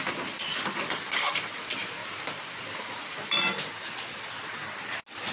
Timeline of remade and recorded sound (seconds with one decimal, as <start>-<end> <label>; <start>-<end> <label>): 0.0-0.5 recorded; 0.5-1.5 remade; 1.5-5.3 recorded